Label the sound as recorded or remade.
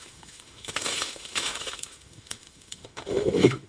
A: remade